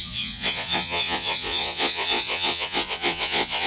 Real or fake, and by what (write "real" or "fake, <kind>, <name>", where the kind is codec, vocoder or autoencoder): fake, vocoder, Vocos